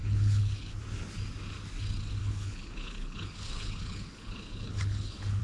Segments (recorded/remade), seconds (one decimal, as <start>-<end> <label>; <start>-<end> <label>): 0.0-0.7 remade; 0.7-2.2 recorded; 2.2-5.4 remade